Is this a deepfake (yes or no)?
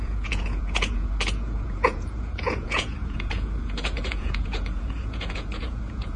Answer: yes